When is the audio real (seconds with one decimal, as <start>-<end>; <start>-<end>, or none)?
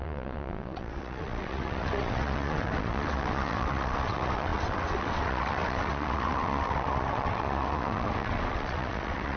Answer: none